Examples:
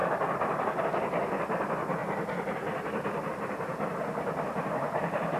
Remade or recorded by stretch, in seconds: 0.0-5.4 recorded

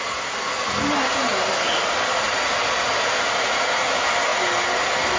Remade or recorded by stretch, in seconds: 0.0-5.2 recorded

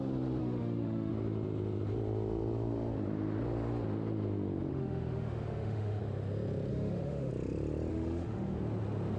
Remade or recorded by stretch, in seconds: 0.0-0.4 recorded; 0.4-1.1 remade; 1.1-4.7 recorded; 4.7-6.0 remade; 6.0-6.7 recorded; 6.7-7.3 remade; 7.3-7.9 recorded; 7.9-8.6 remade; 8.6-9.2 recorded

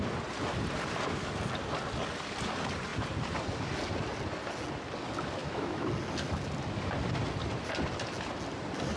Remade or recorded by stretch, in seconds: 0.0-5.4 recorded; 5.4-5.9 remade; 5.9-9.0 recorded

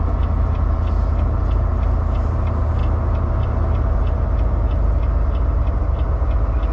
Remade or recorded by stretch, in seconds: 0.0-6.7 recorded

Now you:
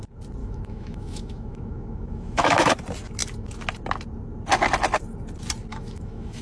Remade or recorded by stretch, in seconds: 0.0-0.4 recorded; 0.4-2.7 remade; 2.7-5.7 recorded; 5.7-6.4 remade

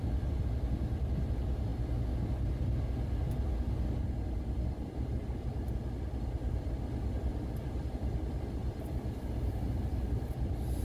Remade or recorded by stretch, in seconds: 0.0-10.8 recorded

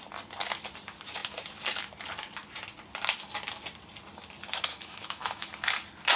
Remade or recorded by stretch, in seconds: 0.0-4.7 recorded; 4.7-5.5 remade; 5.5-6.2 recorded